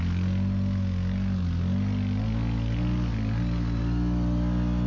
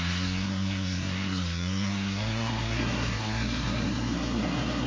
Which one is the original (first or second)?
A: first